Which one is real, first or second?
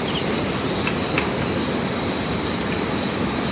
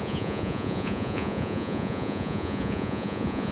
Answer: first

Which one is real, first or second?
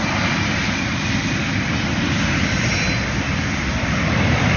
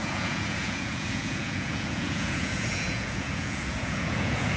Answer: first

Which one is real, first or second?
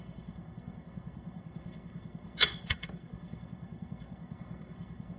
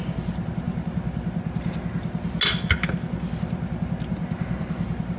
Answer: second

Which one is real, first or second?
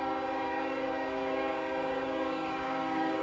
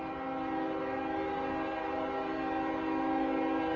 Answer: second